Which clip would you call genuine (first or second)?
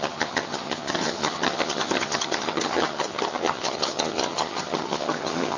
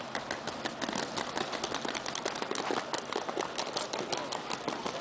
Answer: second